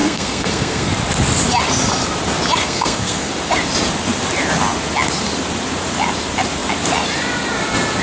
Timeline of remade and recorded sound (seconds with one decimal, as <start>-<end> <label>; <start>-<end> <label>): 0.0-0.9 remade; 0.9-2.6 recorded; 2.6-3.3 remade; 3.3-8.0 recorded

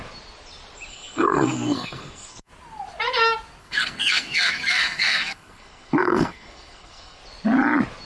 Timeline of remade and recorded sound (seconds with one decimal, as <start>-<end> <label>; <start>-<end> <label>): 0.0-0.9 recorded; 0.9-2.5 remade; 2.5-3.6 recorded; 3.6-7.2 remade; 7.2-8.0 recorded

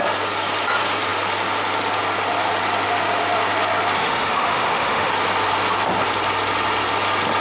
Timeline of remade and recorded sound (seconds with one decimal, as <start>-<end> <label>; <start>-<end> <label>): 0.0-4.0 recorded; 4.0-5.1 remade; 5.1-7.4 recorded

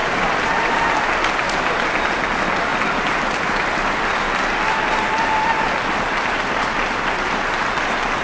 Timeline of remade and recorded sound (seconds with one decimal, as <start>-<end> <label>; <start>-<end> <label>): 0.0-1.0 remade; 1.0-8.2 recorded

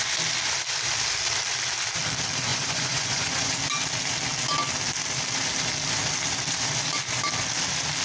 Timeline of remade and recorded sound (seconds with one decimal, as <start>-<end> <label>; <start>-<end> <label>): 0.0-2.5 recorded; 2.5-3.5 remade; 3.5-8.0 recorded

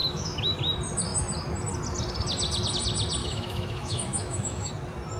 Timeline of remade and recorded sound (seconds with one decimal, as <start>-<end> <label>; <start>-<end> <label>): 0.0-0.6 remade; 0.6-3.2 recorded; 3.2-4.7 remade; 4.7-5.2 recorded